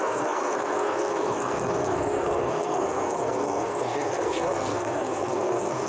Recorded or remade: remade